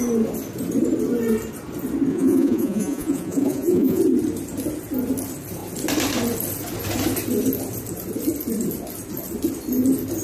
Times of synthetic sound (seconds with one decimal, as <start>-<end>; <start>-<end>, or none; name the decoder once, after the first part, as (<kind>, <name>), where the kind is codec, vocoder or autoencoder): 2.1-4.0 (vocoder, Vocos)